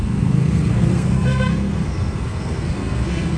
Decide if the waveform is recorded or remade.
remade